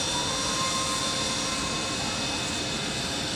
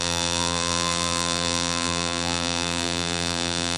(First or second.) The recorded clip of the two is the first